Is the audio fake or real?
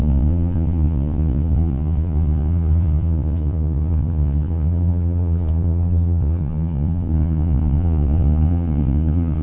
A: fake